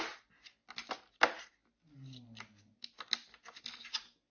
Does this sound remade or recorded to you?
recorded